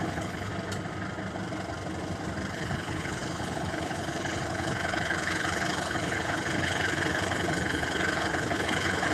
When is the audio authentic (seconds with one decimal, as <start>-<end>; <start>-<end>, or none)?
0.5-2.5